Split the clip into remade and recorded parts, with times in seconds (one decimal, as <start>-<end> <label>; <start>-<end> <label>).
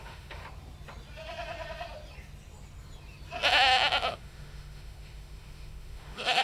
0.0-0.4 remade; 0.4-4.1 recorded; 4.1-6.4 remade